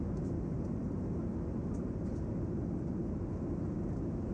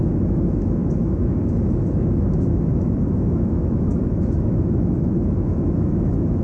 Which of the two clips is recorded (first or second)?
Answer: first